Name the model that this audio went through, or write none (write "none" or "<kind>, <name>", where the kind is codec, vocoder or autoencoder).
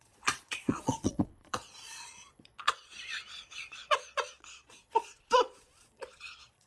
vocoder, Vocos